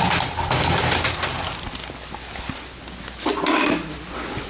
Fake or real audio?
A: real